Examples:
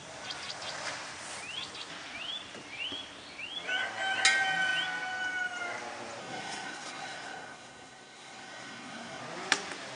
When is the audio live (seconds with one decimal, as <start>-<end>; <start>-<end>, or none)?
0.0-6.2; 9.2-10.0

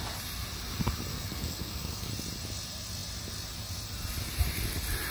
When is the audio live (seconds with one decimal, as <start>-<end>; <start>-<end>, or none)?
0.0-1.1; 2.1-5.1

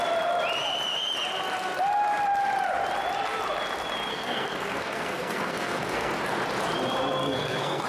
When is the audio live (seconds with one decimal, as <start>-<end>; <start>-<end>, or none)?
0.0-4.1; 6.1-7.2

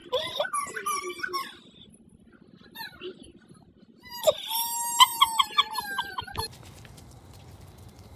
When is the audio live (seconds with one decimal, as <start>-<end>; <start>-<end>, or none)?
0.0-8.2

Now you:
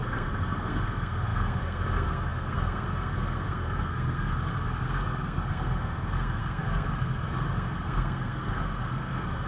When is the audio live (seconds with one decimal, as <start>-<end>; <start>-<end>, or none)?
none

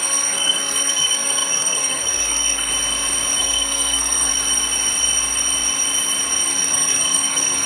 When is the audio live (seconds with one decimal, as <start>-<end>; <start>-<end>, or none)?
2.7-3.4; 4.3-6.5

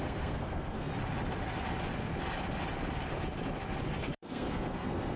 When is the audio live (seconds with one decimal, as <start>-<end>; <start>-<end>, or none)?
0.9-4.0

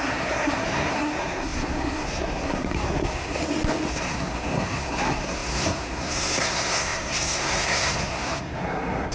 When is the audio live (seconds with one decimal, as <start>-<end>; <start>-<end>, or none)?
3.4-3.9